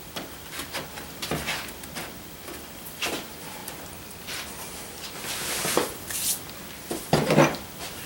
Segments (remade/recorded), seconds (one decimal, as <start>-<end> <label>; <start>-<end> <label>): 0.0-8.1 recorded